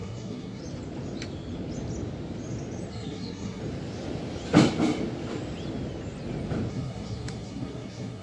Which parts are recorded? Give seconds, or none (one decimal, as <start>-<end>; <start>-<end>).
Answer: 0.6-2.9; 3.6-6.7